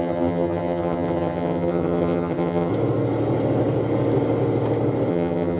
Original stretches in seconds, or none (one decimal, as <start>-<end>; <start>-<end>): 2.7-5.1